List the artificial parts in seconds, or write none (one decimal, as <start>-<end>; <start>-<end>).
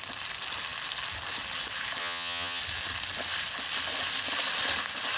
2.0-2.6